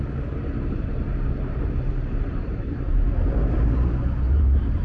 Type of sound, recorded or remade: remade